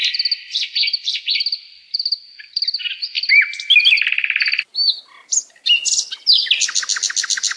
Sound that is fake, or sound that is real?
real